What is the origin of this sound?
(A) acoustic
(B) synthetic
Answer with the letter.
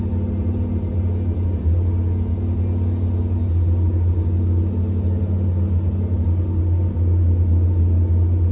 A